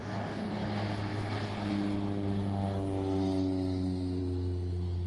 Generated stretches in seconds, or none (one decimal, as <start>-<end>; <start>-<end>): 0.0-0.5